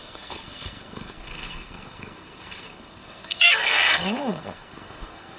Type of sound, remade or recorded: remade